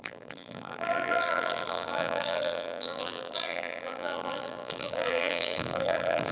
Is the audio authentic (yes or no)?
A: no